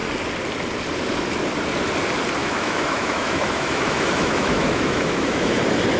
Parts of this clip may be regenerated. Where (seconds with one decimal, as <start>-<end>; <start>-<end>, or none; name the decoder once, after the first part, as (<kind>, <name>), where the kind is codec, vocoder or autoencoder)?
2.4-5.6 (autoencoder, DAC-VAE)